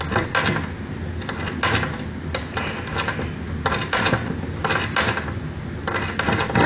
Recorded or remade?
recorded